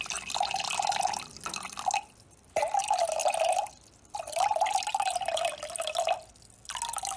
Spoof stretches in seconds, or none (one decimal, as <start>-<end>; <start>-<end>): none